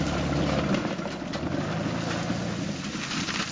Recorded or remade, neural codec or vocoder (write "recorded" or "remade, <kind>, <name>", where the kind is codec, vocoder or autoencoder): recorded